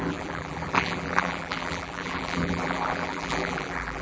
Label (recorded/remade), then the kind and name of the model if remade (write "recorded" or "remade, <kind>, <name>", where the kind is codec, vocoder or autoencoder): remade, vocoder, BigVGAN v2